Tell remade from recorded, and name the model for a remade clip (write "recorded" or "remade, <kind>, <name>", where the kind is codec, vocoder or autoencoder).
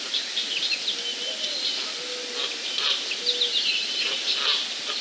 recorded